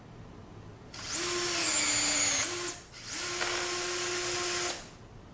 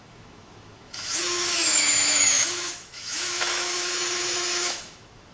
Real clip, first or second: first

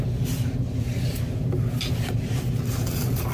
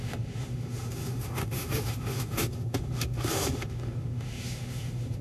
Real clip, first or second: first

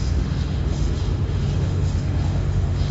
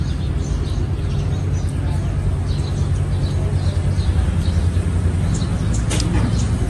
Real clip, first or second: second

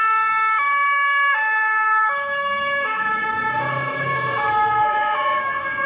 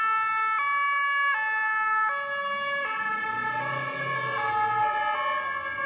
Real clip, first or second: second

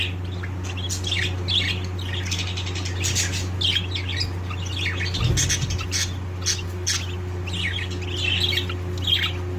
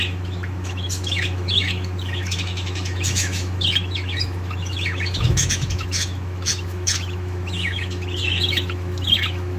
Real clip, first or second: first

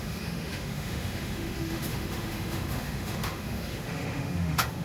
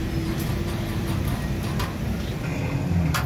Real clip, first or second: second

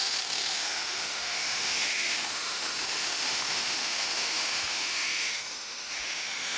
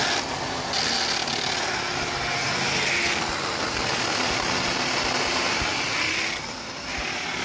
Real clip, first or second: second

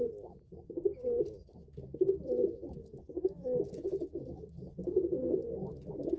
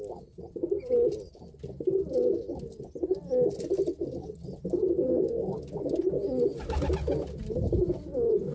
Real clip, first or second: second